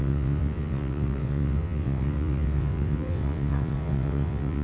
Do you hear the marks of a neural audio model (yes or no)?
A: yes